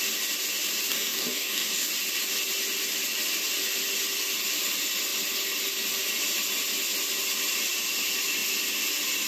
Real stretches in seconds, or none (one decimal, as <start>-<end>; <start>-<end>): 0.0-0.9; 1.9-9.3